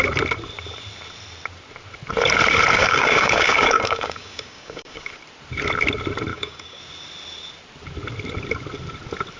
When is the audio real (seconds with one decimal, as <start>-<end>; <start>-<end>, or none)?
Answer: 0.0-2.8; 5.1-6.3; 6.8-9.4